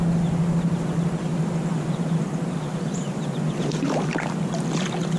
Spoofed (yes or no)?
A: no